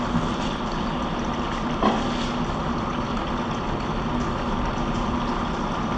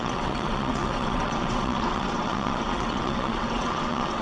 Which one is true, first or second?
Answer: first